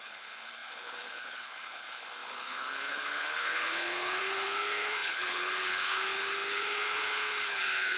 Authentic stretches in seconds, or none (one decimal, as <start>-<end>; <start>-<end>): none